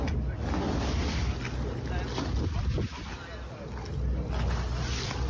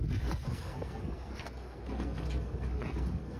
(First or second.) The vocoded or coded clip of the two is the second